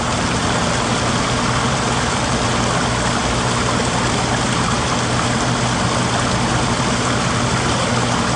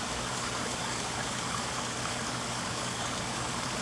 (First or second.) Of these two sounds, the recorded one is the first